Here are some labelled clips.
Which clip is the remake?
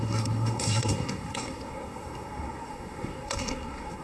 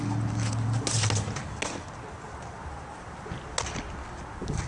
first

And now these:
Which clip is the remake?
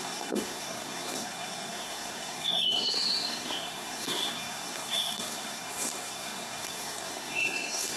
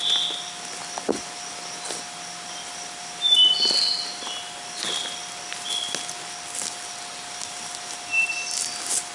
first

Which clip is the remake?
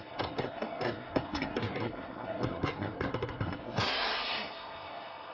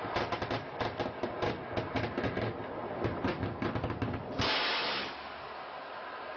first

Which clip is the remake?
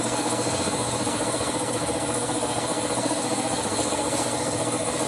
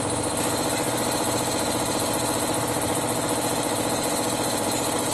first